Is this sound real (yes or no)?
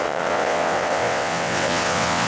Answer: no